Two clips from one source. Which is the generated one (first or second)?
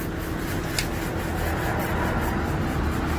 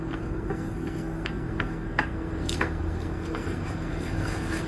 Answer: second